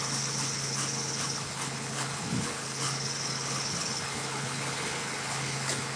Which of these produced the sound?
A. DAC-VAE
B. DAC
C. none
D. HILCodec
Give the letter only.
D